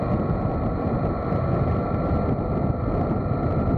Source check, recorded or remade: recorded